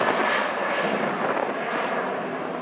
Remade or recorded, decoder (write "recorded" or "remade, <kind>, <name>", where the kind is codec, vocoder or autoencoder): recorded